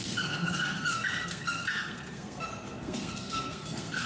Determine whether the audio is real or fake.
fake